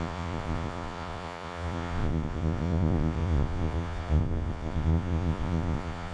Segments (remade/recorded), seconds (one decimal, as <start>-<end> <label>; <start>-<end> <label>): 0.0-6.1 remade